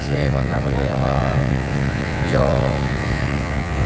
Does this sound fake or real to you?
fake